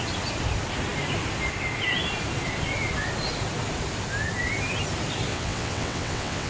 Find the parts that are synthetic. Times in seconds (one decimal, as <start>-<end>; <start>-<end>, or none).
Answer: 5.3-6.5